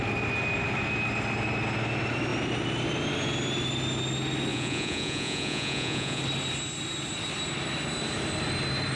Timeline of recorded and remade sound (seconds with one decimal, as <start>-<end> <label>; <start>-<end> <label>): 0.0-4.5 recorded; 4.5-6.2 remade; 6.2-9.0 recorded